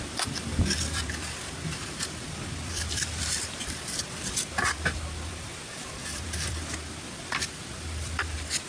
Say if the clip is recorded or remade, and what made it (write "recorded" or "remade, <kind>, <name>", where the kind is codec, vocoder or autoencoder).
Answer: remade, vocoder, BigVGAN v2